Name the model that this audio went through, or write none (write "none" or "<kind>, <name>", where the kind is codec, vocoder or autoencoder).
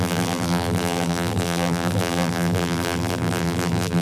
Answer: vocoder, BigVGAN v2